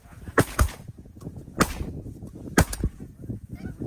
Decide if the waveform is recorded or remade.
remade